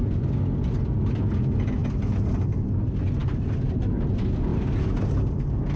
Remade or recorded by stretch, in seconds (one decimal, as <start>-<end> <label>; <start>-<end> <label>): 0.0-3.2 recorded; 3.2-4.1 remade; 4.1-5.8 recorded